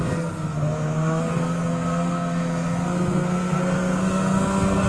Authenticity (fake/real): fake